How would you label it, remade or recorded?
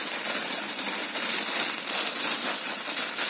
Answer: recorded